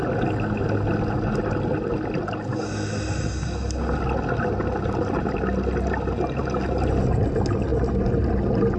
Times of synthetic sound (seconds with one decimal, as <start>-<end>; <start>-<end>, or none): none